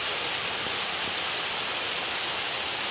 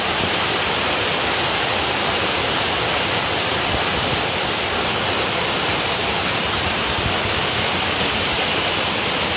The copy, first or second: second